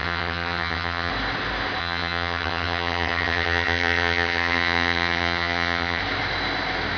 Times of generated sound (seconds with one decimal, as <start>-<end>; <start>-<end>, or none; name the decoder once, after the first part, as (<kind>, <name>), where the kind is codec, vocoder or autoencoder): 0.0-1.1 (vocoder, HiFi-GAN); 1.8-6.0